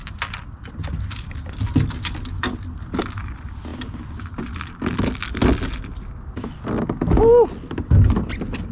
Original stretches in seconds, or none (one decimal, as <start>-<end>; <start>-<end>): 0.0-8.7